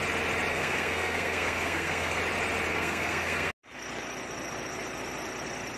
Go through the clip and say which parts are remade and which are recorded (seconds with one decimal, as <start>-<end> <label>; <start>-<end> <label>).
0.0-0.5 recorded; 0.5-2.2 remade; 2.2-2.7 recorded; 2.7-3.5 remade; 3.5-5.8 recorded